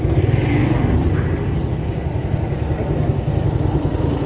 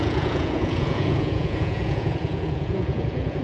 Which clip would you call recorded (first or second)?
first